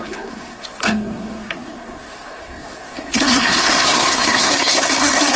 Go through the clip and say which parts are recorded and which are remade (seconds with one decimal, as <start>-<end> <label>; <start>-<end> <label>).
0.0-5.4 remade